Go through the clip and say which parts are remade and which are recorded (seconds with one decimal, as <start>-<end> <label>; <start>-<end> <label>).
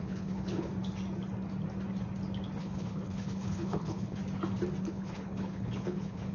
0.0-0.7 remade; 0.7-2.6 recorded; 2.6-4.2 remade; 4.2-4.8 recorded; 4.8-6.3 remade